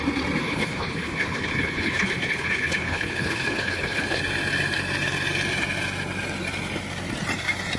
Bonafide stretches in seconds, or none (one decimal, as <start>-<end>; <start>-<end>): 0.0-0.4; 4.2-7.8